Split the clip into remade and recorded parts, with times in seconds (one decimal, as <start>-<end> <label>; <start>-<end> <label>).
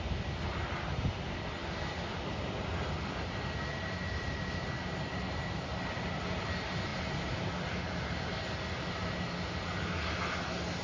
0.0-10.8 recorded